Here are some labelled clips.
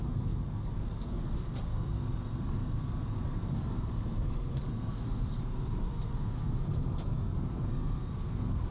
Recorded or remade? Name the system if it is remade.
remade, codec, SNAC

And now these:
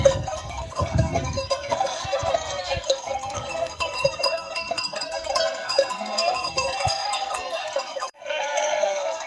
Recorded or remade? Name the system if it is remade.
remade, codec, SNAC